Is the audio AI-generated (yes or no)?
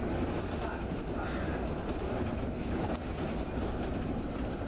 no